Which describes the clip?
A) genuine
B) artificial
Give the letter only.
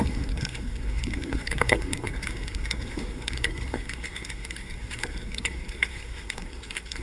B